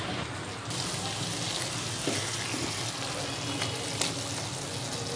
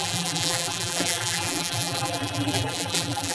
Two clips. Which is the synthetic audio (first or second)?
second